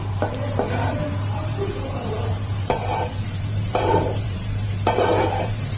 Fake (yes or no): yes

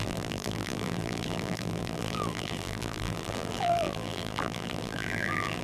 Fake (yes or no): yes